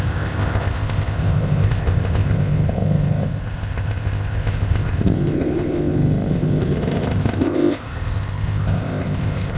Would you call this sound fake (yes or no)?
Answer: yes